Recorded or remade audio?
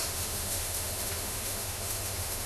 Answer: remade